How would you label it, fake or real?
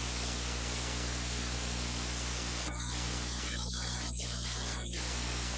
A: fake